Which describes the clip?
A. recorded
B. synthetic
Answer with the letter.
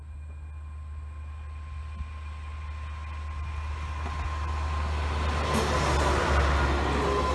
A